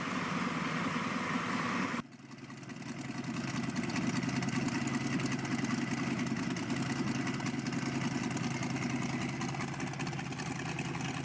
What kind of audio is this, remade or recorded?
recorded